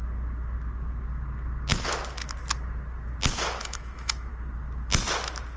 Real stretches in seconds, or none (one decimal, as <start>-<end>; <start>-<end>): 0.0-3.6; 4.3-5.6